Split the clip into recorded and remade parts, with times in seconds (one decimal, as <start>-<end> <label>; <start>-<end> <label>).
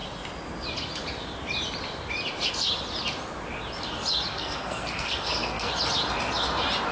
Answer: 0.0-4.3 recorded; 4.3-5.7 remade; 5.7-6.9 recorded